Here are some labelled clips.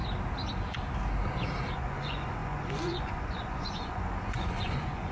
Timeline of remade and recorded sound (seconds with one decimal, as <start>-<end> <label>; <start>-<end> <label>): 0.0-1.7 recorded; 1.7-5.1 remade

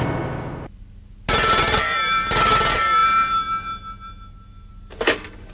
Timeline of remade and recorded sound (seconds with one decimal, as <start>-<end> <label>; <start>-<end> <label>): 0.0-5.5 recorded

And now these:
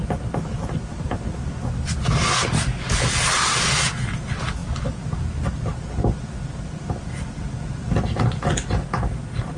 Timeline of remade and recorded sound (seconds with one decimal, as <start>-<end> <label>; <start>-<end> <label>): 0.0-9.6 recorded

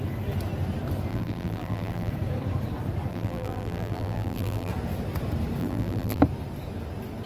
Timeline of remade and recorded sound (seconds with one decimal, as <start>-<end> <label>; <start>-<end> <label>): 0.0-1.1 recorded; 1.1-2.1 remade; 2.1-3.1 recorded; 3.1-4.7 remade; 4.7-5.6 recorded; 5.6-6.2 remade; 6.2-7.3 recorded

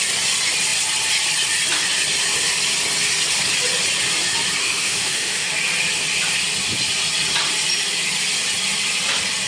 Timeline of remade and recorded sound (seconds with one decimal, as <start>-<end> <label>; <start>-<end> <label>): 0.0-4.6 recorded; 4.6-5.5 remade; 5.5-9.5 recorded

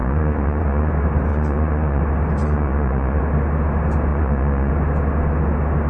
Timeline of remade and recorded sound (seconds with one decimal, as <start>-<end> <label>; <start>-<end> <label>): 0.0-0.9 remade; 0.9-1.3 recorded; 1.3-2.0 remade; 2.0-2.4 recorded; 2.4-3.2 remade; 3.2-4.1 recorded; 4.1-4.7 remade; 4.7-5.9 recorded

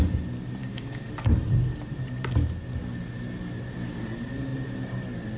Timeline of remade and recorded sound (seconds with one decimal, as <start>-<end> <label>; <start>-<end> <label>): 0.0-0.6 recorded; 0.6-1.1 remade; 1.1-5.4 recorded